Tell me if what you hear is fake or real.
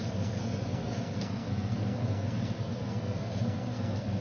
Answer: fake